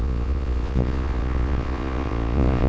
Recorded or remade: remade